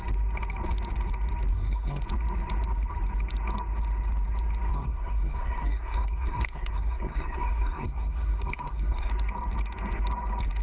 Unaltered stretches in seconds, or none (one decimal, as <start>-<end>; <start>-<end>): 0.0-1.5; 2.0-4.7; 9.1-10.6